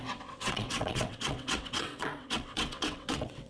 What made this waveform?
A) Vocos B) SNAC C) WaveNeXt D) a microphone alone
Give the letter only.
C